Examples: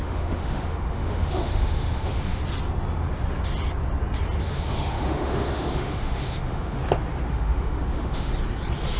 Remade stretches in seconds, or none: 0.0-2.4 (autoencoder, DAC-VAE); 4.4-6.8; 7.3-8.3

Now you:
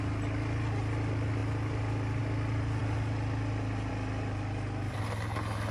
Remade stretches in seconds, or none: none

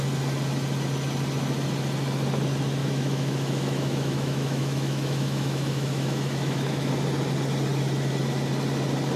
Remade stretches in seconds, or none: 2.8-6.9 (autoencoder, DAC-VAE)

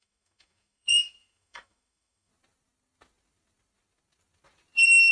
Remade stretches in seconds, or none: 0.0-2.3 (autoencoder, DAC-VAE)

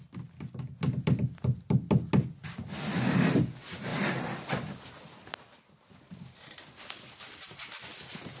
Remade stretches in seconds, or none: none

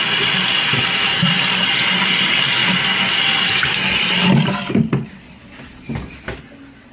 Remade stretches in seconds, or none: none

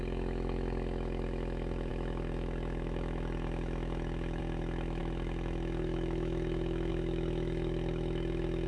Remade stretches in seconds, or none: 0.0-8.7 (autoencoder, DAC-VAE)

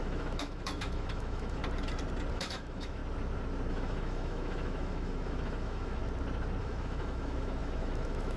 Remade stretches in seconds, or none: 0.0-1.6 (autoencoder, DAC-VAE); 2.3-3.0; 3.7-6.0; 6.6-8.4